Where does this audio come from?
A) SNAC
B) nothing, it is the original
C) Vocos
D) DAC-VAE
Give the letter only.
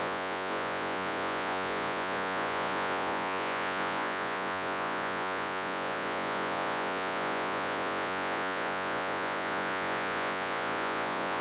C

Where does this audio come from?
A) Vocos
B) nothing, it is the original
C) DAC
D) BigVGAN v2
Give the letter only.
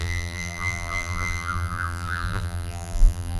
D